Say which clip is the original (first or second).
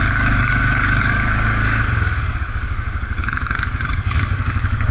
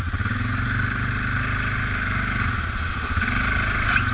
second